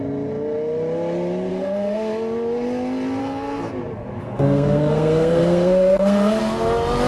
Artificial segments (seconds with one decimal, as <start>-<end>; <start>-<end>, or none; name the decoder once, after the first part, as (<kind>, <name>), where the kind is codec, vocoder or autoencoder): 1.5-2.1 (codec, SNAC); 3.2-3.7; 4.2-6.4